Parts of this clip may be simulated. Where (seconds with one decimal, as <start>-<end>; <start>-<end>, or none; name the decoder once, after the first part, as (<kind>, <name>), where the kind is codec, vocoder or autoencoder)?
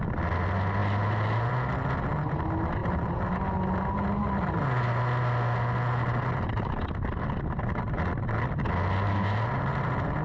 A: none